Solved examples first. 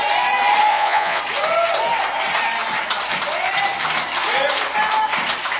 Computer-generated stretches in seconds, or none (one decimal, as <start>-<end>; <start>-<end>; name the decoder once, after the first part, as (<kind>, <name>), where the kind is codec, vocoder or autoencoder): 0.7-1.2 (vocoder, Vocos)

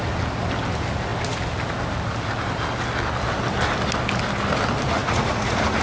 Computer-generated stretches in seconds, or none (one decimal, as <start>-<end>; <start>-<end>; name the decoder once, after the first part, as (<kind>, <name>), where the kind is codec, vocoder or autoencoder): 5.0-5.8 (vocoder, Vocos)

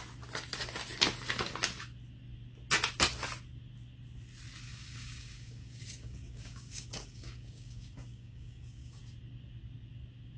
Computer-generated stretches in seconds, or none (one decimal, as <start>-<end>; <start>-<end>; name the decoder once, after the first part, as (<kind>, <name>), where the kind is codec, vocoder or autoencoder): 4.7-9.0 (codec, DAC)

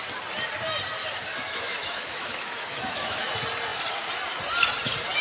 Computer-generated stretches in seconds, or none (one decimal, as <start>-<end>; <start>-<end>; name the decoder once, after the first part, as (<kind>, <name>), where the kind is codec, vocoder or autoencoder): 1.0-3.3 (autoencoder, DAC-VAE)

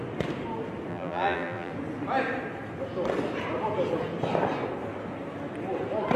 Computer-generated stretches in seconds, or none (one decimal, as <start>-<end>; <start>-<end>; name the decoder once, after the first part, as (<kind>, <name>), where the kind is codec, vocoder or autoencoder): 0.9-1.7 (vocoder, BigVGAN v2)

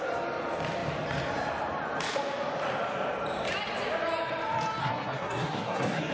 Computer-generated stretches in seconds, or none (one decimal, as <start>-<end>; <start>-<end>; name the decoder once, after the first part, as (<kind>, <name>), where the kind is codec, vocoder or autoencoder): 4.8-6.1 (codec, SNAC)